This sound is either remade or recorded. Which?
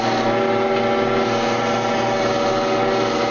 recorded